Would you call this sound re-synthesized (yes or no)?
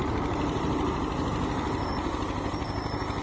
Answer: no